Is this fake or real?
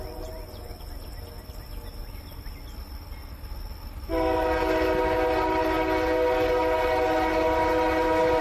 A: real